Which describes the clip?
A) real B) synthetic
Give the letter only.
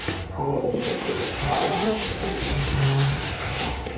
B